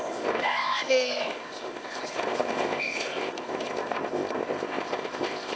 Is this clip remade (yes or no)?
yes